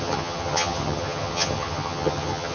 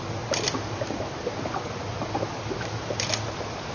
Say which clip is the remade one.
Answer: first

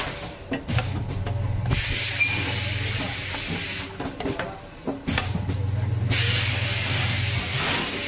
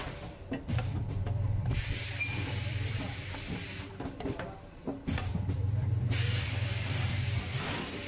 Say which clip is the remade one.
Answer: second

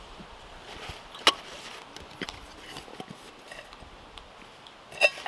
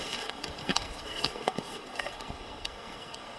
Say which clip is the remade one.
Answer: second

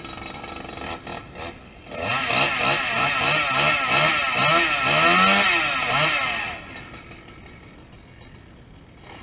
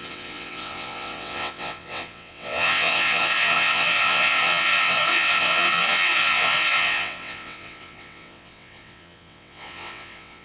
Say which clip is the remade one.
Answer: second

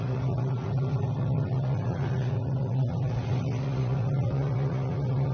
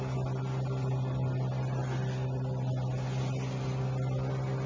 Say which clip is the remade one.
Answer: first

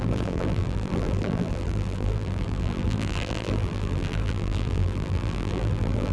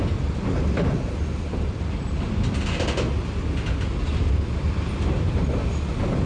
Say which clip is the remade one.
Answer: first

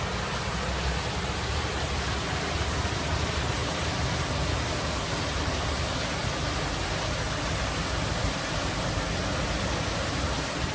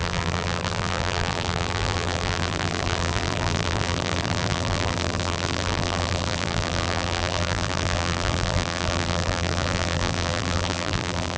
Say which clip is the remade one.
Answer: second